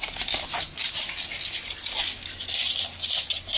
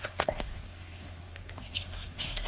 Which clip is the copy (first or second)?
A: second